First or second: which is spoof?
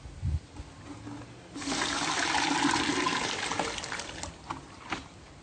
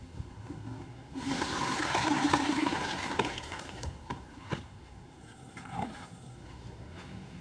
second